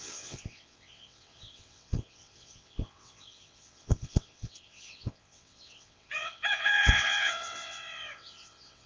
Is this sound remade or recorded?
remade